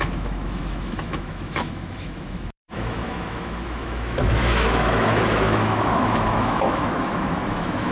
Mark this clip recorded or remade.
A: remade